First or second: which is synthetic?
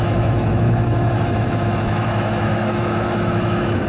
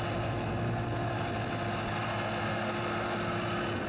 first